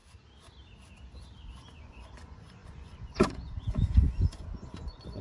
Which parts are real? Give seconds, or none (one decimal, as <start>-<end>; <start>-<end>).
0.0-1.7